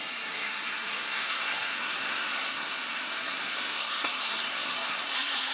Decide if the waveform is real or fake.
fake